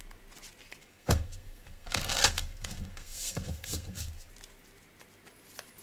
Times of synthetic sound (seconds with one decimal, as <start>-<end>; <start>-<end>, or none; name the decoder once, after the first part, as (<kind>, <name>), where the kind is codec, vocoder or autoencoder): 0.8-4.3 (codec, SNAC)